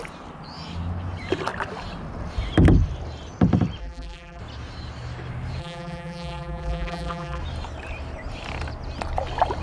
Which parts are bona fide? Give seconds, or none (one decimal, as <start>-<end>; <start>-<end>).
0.0-3.8; 4.4-5.6; 7.4-9.6